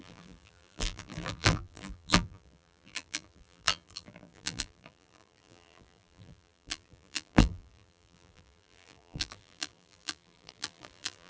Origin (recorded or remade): remade